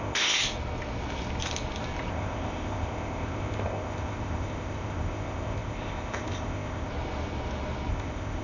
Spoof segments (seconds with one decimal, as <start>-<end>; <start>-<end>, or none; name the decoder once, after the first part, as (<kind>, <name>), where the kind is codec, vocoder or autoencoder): 0.0-0.4 (codec, ZipCodec); 2.1-6.9; 7.9-8.4